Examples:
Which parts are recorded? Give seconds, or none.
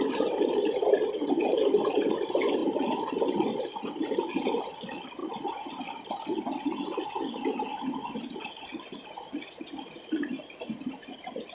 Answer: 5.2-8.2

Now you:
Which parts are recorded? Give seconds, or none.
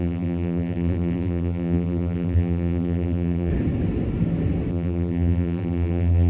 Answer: 3.5-4.7